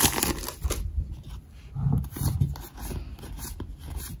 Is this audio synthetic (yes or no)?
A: no